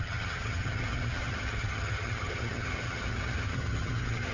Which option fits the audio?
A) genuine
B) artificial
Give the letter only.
B